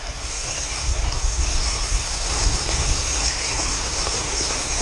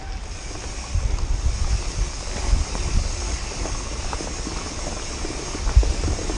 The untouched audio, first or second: second